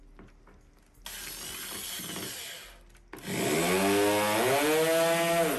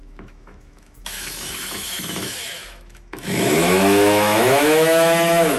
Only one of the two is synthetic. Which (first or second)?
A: second